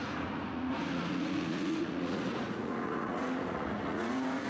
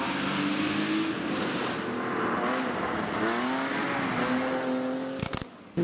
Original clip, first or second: second